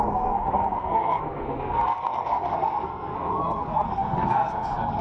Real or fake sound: fake